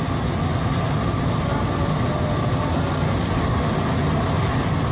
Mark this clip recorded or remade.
recorded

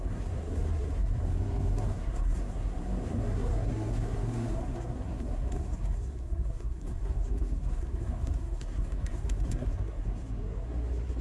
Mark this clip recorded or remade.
remade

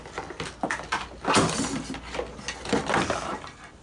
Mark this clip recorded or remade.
recorded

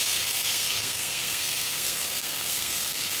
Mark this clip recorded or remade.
remade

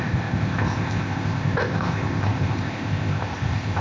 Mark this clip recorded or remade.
remade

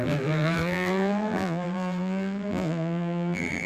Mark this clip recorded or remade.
remade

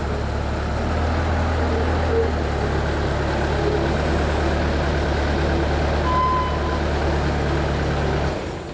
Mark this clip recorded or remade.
recorded